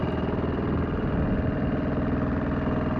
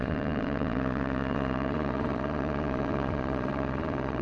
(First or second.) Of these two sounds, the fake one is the second